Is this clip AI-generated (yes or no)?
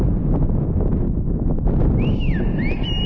no